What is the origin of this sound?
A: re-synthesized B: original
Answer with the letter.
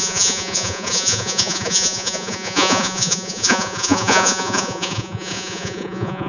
A